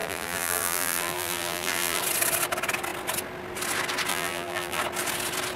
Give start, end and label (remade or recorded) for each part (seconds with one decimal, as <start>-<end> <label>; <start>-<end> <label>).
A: 0.0-2.0 remade; 2.0-4.1 recorded; 4.1-4.8 remade; 4.8-5.6 recorded